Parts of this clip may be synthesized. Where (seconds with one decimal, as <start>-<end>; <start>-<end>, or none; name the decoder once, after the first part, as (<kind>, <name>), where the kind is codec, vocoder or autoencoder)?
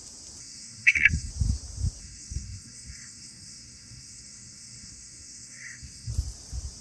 0.4-1.3 (codec, SNAC); 2.0-6.1